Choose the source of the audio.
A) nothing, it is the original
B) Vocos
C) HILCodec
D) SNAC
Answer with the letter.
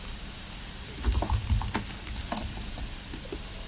A